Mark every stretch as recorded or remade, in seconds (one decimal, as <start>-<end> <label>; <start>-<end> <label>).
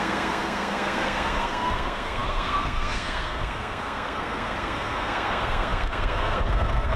0.0-7.0 remade